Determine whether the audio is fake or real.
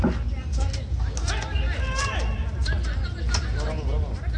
real